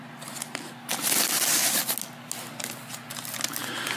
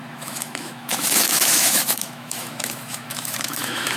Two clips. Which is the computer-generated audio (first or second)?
second